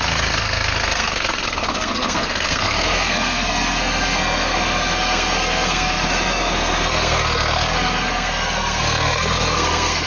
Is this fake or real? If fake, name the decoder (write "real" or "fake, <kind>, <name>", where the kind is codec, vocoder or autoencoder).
fake, codec, SNAC